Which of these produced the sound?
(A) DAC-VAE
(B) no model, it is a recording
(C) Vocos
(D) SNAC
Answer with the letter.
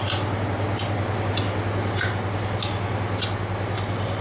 B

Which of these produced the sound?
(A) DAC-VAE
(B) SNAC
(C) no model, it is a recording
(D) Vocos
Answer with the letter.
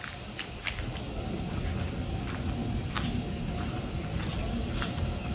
C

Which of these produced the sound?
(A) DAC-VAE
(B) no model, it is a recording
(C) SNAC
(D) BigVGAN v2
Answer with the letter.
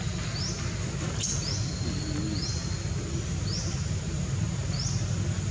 B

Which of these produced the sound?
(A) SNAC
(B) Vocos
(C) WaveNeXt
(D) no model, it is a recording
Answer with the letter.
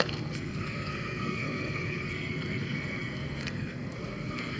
A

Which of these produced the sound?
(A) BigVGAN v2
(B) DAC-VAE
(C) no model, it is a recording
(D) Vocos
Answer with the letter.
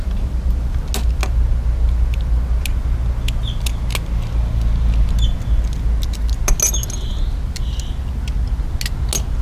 C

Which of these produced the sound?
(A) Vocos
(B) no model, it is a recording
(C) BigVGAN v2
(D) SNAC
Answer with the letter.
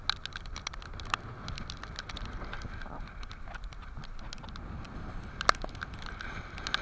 B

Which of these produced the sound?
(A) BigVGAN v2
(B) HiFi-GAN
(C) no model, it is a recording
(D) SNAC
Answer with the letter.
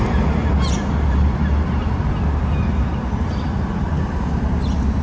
C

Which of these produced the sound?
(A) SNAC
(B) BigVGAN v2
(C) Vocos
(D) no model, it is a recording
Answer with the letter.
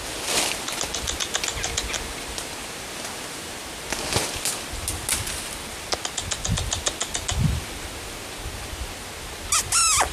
D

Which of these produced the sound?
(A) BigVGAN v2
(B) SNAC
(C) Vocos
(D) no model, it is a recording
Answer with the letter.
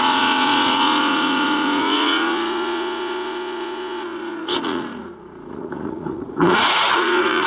C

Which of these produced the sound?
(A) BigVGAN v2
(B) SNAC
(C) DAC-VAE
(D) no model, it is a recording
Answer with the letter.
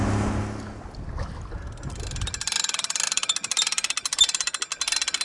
D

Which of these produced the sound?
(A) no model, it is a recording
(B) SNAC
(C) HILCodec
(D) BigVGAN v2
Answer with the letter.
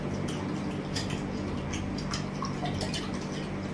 A